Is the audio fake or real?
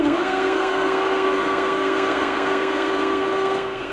fake